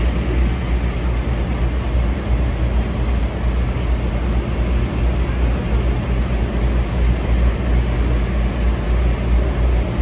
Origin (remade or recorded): recorded